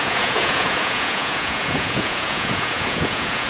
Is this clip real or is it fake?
fake